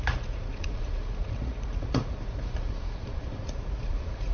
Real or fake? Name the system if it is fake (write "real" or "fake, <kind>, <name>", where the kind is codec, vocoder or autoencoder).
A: fake, vocoder, Vocos